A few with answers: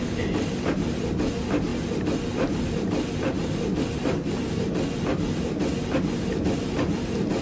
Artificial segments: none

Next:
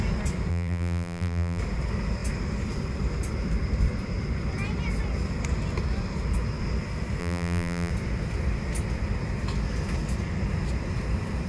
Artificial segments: 0.5-1.6 (vocoder, BigVGAN v2); 7.2-7.9

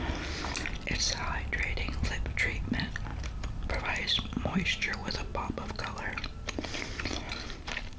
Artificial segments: 3.1-3.8 (vocoder, BigVGAN v2); 5.0-8.0